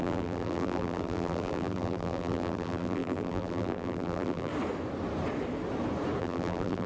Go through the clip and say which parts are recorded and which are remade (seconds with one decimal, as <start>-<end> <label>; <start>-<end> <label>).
0.0-4.5 remade; 4.5-6.2 recorded; 6.2-6.9 remade